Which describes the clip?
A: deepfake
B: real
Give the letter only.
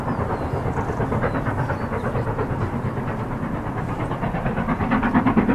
B